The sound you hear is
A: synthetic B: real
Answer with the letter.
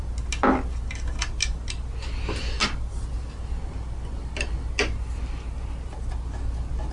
B